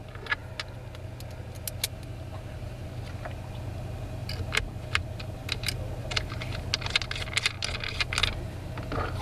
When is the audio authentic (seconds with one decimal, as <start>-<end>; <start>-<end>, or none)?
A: 0.0-9.2